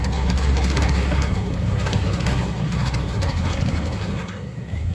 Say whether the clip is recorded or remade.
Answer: remade